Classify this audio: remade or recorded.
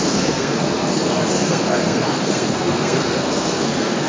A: remade